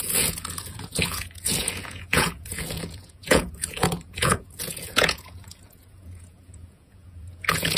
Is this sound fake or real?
fake